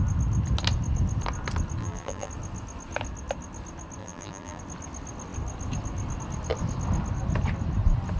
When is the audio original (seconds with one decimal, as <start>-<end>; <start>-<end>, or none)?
0.0-1.8; 2.3-4.0; 4.6-8.2